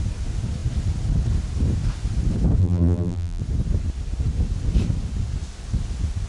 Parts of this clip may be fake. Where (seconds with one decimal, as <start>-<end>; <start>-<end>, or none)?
2.6-3.4